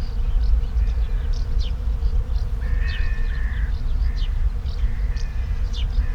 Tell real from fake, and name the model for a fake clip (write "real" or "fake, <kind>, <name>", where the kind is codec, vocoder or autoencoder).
fake, vocoder, BigVGAN v2